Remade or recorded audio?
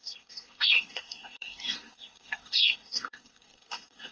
remade